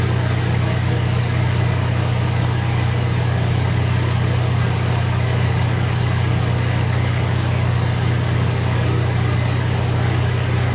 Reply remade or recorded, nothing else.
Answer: remade